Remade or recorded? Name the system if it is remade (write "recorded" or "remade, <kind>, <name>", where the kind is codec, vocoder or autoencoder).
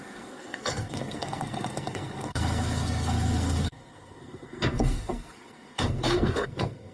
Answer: remade, codec, SNAC